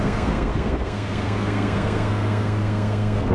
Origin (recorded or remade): remade